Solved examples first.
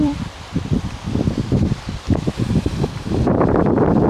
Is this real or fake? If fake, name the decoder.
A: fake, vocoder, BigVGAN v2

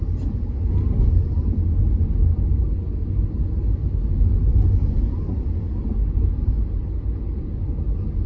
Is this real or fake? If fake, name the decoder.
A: real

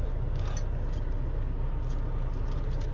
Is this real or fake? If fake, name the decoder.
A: real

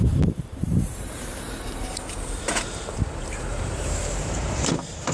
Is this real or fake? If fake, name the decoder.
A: fake, vocoder, BigVGAN v2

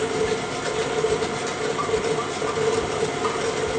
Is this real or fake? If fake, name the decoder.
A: real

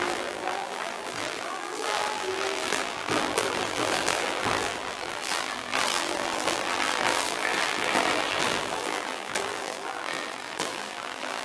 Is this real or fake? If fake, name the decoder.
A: fake, vocoder, BigVGAN v2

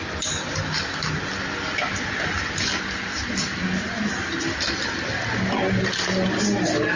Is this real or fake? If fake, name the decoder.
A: real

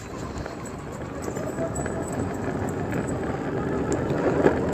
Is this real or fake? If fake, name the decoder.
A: real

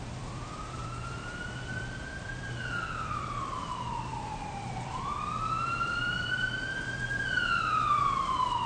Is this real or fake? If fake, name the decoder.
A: fake, vocoder, BigVGAN v2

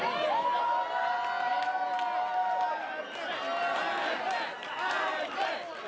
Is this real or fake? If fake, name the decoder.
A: real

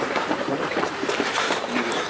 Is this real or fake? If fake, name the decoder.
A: fake, vocoder, BigVGAN v2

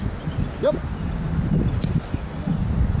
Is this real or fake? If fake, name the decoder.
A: real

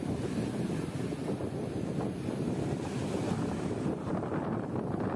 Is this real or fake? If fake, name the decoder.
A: real